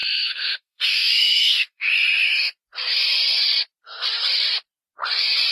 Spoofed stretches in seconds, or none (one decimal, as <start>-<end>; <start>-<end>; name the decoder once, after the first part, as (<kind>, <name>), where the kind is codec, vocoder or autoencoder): 0.0-1.9 (autoencoder, DAC-VAE)